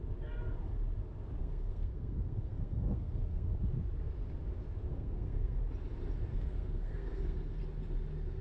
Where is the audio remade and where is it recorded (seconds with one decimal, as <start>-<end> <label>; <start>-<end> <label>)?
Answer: 0.0-1.4 recorded; 1.4-3.5 remade; 3.5-4.9 recorded; 4.9-5.6 remade; 5.6-6.3 recorded; 6.3-7.6 remade; 7.6-8.4 recorded